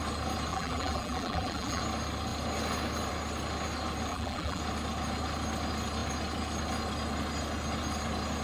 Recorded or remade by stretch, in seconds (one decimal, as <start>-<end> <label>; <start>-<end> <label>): 0.0-0.5 recorded; 0.5-1.8 remade; 1.8-4.1 recorded; 4.1-4.6 remade; 4.6-8.4 recorded